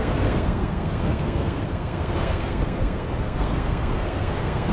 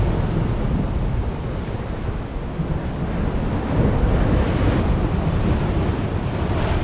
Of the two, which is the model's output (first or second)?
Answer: first